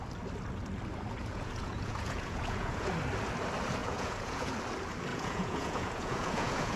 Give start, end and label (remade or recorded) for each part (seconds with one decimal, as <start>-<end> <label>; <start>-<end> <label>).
0.0-1.2 recorded; 1.2-2.9 remade; 2.9-3.8 recorded; 3.8-4.5 remade; 4.5-5.1 recorded; 5.1-6.8 remade